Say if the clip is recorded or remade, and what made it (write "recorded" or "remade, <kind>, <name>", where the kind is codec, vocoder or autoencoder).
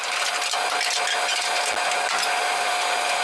recorded